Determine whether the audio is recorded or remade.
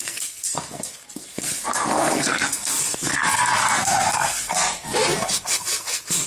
remade